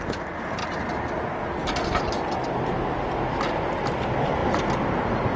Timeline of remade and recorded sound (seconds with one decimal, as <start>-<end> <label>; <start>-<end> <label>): 0.0-0.6 remade; 0.6-3.8 recorded; 3.8-5.4 remade